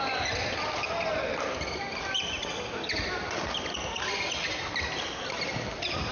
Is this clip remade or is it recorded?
recorded